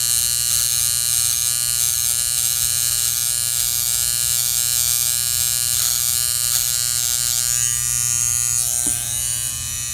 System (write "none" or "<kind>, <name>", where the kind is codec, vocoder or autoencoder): none